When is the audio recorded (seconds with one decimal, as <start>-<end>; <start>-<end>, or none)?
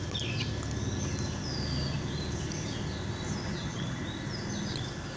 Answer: 0.0-3.4; 4.0-5.2